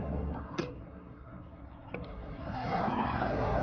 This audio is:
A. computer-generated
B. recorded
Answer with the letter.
A